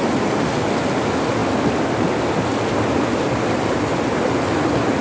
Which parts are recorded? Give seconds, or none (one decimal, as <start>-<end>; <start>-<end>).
0.0-5.0